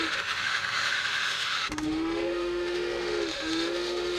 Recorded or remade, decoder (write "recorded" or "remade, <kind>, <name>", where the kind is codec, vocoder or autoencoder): remade, autoencoder, DAC-VAE